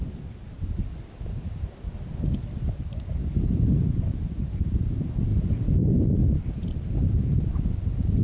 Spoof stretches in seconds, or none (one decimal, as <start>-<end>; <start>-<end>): 0.0-0.9; 2.7-8.2